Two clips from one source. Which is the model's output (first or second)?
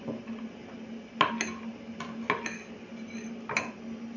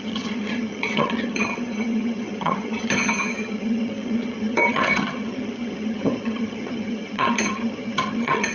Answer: second